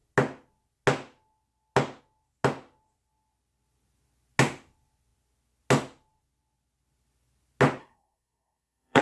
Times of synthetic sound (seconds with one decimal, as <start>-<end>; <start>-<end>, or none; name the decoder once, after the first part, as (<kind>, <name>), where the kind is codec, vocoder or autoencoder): 7.8-9.0 (codec, SNAC)